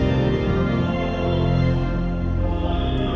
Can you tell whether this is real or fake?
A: fake